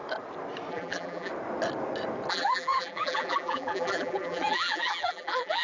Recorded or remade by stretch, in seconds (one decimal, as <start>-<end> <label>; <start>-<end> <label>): 0.0-0.7 recorded; 0.7-1.3 remade; 1.3-2.3 recorded; 2.3-5.6 remade